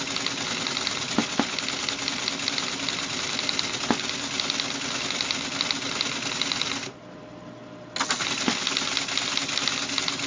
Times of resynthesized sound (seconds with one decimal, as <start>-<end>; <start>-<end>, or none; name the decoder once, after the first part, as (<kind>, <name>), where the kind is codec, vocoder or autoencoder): none